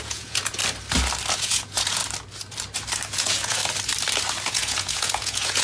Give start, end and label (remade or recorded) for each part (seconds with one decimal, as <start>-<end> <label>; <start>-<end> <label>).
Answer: 0.0-0.6 remade; 0.6-1.4 recorded; 1.4-2.0 remade; 2.0-3.1 recorded; 3.1-3.6 remade; 3.6-4.5 recorded; 4.5-5.6 remade